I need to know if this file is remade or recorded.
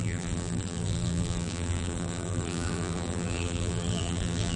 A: remade